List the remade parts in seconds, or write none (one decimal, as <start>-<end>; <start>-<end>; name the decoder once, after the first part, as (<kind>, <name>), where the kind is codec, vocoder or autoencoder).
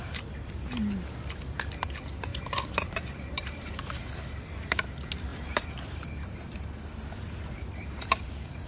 2.3-4.0 (vocoder, BigVGAN v2); 5.3-8.7